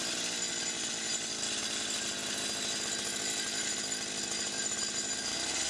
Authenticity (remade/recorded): recorded